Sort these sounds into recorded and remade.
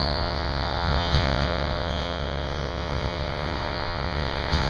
remade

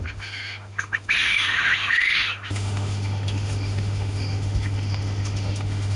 remade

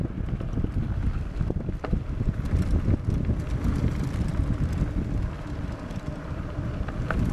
recorded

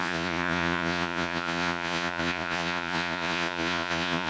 remade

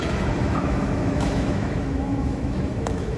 remade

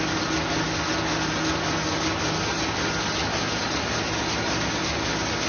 recorded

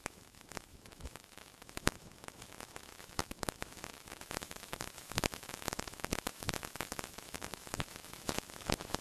remade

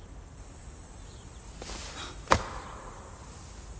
recorded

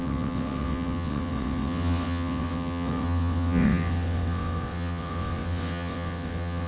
remade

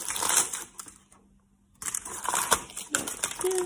recorded